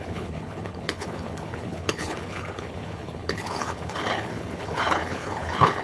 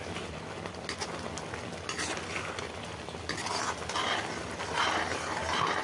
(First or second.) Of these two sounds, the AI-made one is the first